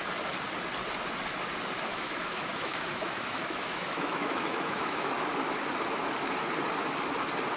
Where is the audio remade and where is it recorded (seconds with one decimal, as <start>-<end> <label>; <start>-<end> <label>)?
0.0-1.9 recorded; 1.9-5.1 remade; 5.1-7.6 recorded